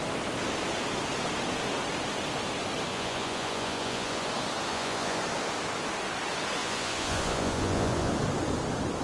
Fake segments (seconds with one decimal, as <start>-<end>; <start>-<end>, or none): 2.9-4.3; 4.7-5.2; 6.6-8.1

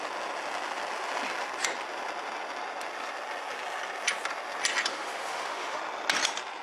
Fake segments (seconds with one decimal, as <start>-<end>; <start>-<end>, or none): 4.9-5.8

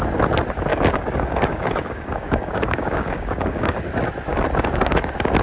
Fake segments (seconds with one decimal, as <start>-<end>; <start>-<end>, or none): 0.7-3.9

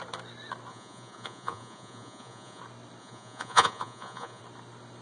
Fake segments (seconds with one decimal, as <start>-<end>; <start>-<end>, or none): 0.7-2.6; 3.0-4.4

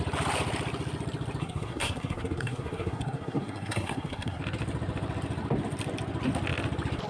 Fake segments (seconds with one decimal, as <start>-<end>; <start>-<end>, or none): 1.4-4.4